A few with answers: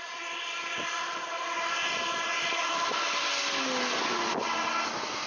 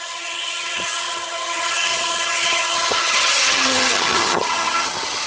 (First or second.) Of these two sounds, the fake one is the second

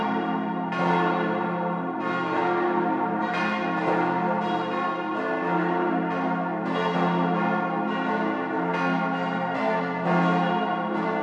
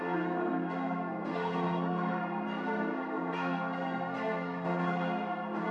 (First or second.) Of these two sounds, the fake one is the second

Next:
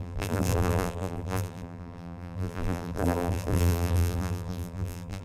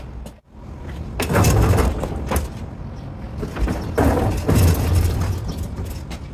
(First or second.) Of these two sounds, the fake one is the first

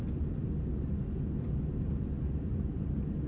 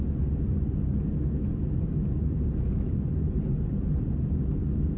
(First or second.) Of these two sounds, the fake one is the first